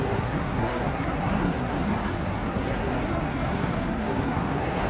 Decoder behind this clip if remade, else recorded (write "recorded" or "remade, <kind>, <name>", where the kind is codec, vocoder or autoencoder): remade, codec, SNAC